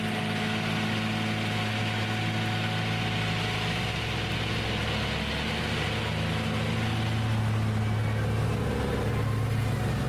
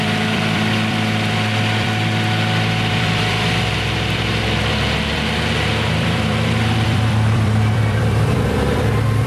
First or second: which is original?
first